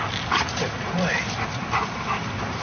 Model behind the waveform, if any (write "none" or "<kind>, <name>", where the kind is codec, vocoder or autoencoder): vocoder, BigVGAN v2